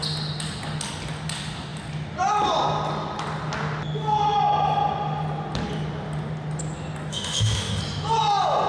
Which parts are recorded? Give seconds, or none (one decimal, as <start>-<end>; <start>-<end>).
0.0-7.1; 7.8-8.7